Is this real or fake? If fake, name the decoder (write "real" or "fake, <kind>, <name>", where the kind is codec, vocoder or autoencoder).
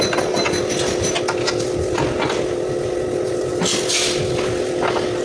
real